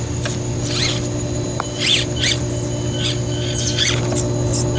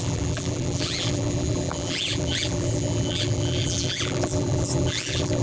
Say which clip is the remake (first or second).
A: second